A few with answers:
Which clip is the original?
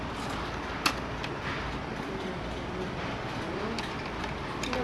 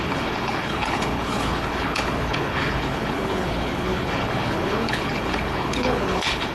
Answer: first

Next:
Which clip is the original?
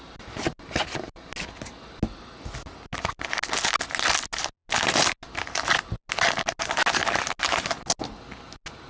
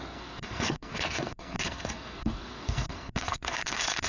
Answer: first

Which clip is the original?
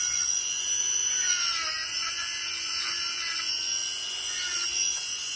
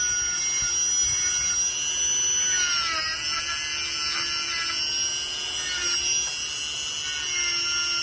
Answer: second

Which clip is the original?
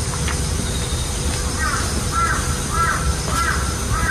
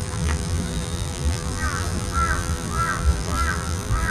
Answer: first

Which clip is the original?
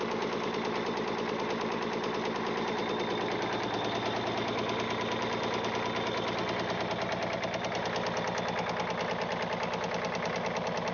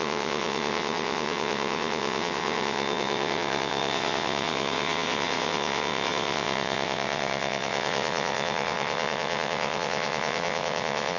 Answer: first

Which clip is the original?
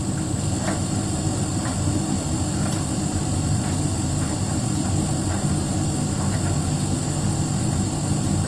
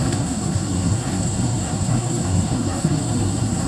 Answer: first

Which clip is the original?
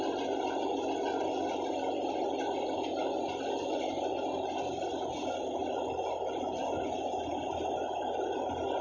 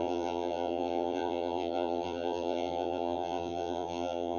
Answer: first